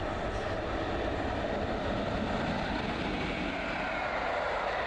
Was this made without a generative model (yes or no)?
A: yes